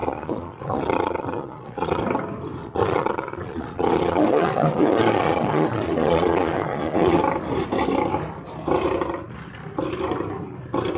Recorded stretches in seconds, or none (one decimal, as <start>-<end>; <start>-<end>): 2.0-2.6; 7.2-11.0